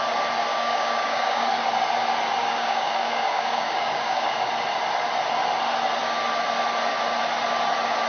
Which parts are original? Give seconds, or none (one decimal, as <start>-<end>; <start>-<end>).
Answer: 0.0-0.5; 1.5-2.4; 4.5-8.1